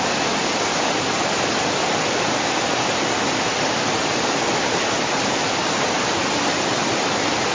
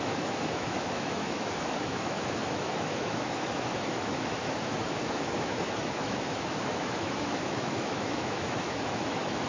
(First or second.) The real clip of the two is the first